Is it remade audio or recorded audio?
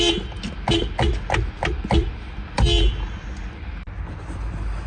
recorded